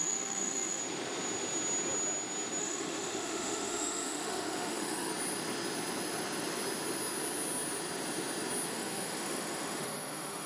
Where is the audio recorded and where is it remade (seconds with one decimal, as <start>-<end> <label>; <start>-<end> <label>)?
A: 0.0-0.8 remade; 0.8-2.6 recorded; 2.6-5.1 remade; 5.1-8.7 recorded; 8.7-10.5 remade

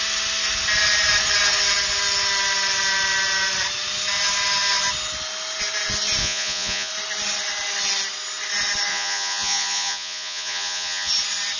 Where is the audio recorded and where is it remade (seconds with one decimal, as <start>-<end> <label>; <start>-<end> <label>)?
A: 0.0-6.2 recorded; 6.2-6.9 remade; 6.9-8.9 recorded; 8.9-11.1 remade; 11.1-11.6 recorded

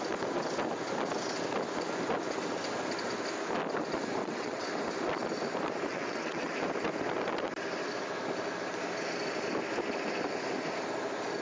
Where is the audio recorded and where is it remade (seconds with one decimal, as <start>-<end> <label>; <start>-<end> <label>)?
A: 0.0-4.2 recorded; 4.2-4.7 remade; 4.7-5.9 recorded; 5.9-6.5 remade; 6.5-11.4 recorded